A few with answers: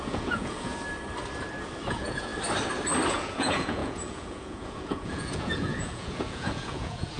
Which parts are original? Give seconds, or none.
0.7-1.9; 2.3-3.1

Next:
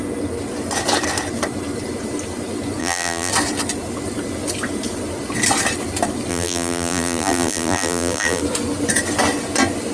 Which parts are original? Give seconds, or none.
0.0-2.8; 3.3-6.3; 8.4-9.9

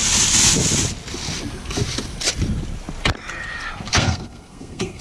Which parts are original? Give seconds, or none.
0.0-3.9

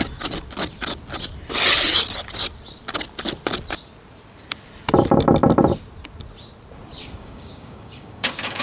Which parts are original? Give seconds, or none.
0.0-7.0

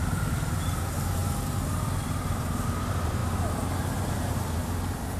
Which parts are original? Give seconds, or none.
1.2-2.8; 3.2-3.8; 4.6-5.2

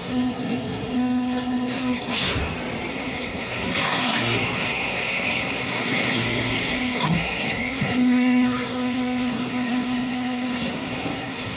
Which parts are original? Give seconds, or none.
2.4-2.9

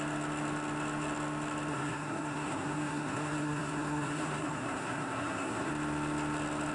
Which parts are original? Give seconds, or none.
0.0-1.7; 5.7-6.7